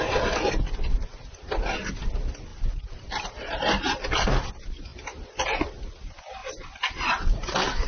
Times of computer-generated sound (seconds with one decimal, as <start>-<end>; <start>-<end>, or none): 2.5-4.5; 4.9-5.6; 6.4-7.9